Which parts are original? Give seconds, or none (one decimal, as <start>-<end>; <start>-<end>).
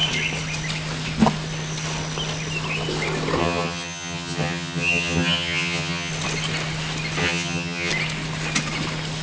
0.0-3.4; 6.1-7.2; 7.9-9.2